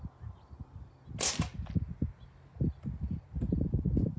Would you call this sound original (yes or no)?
yes